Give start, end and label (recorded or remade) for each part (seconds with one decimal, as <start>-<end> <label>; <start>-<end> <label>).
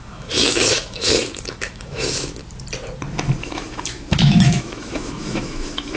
0.0-2.4 remade; 2.4-3.4 recorded; 3.4-6.0 remade